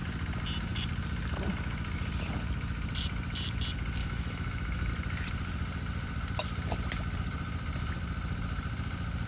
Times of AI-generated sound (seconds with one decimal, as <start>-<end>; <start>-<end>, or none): 4.0-4.9